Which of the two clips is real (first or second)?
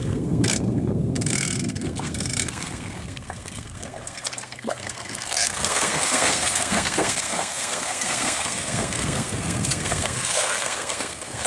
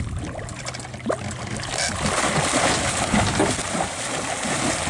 second